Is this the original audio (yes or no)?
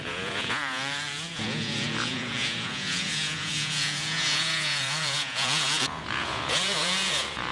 no